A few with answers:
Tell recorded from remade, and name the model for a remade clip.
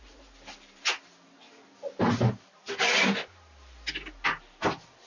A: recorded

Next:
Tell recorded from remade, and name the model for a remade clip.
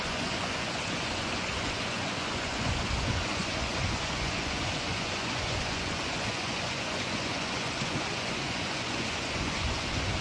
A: remade, vocoder, Vocos